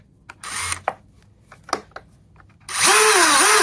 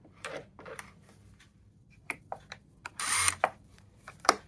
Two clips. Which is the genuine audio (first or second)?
first